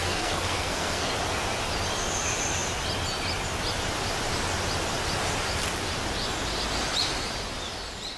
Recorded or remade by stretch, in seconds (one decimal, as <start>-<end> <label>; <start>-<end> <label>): 0.0-1.1 remade; 1.1-8.2 recorded